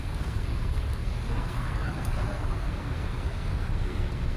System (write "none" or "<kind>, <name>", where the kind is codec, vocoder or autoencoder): codec, SNAC